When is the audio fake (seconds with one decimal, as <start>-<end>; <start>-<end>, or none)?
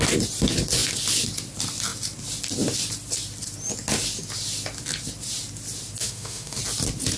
6.0-6.6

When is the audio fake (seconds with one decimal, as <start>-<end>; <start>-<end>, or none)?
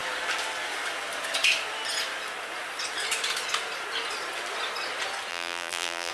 5.3-6.1